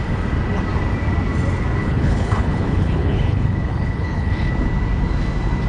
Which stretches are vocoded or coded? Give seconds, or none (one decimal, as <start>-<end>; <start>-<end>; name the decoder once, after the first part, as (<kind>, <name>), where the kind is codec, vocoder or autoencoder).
1.8-4.5 (codec, HILCodec)